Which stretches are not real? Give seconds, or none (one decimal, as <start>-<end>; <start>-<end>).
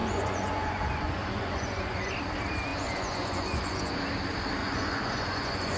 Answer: 0.0-2.1; 2.7-4.0; 4.6-5.8